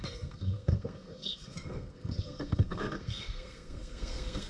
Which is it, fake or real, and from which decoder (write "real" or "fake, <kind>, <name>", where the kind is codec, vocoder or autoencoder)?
fake, codec, SNAC